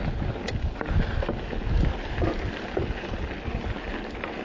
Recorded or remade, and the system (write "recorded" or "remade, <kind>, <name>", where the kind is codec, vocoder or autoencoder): recorded